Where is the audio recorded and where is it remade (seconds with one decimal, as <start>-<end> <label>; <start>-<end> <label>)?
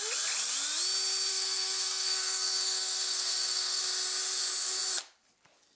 0.0-1.3 recorded; 1.3-3.8 remade; 3.8-5.8 recorded